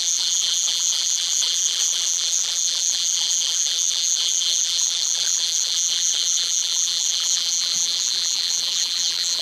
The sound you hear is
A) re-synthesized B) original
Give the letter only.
A